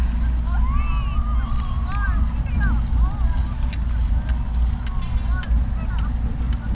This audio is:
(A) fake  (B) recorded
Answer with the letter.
B